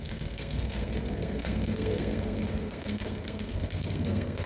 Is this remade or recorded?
remade